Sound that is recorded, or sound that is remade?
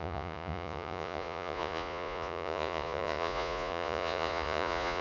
remade